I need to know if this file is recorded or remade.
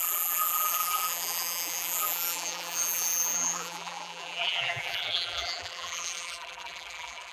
remade